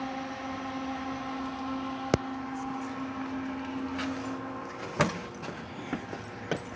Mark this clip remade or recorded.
recorded